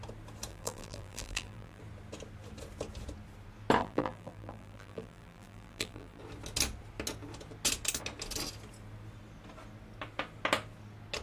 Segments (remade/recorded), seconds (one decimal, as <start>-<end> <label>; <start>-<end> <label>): 0.0-0.5 recorded; 0.5-1.8 remade; 1.8-3.8 recorded; 3.8-6.2 remade; 6.2-11.2 recorded